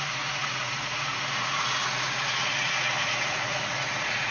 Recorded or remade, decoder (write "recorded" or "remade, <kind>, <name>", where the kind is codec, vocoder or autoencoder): remade, vocoder, Vocos